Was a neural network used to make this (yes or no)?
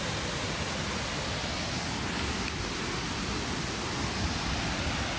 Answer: no